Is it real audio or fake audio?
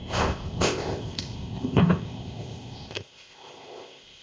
fake